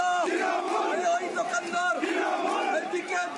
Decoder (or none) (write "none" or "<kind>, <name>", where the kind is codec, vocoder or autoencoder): none